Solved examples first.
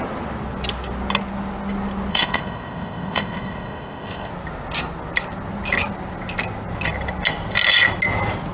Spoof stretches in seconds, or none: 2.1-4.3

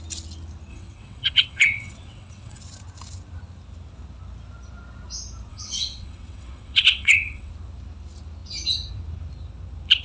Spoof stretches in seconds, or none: 0.7-2.6; 5.5-7.5